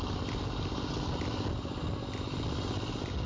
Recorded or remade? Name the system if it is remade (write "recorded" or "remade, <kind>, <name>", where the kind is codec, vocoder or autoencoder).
recorded